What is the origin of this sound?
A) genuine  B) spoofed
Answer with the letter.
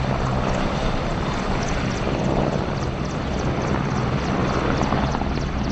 A